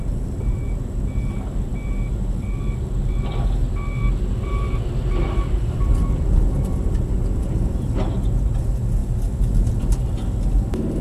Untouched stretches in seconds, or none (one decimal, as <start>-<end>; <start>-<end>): 0.0-11.0